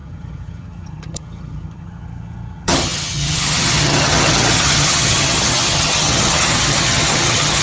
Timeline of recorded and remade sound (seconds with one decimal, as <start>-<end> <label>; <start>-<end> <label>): 0.0-7.6 remade